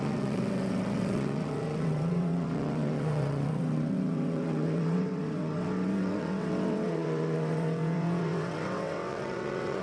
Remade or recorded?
remade